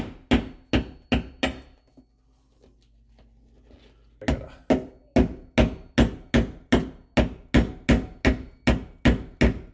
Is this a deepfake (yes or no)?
no